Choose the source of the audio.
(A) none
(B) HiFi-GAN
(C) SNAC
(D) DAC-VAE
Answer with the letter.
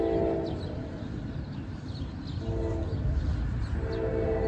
A